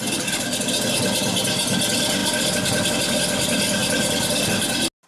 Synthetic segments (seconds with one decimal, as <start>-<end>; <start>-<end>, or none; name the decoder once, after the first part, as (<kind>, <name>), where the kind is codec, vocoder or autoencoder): none